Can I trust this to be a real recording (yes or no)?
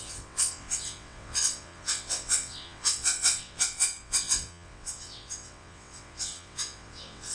no